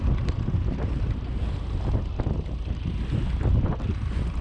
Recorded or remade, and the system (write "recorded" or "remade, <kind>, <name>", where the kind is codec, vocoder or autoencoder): recorded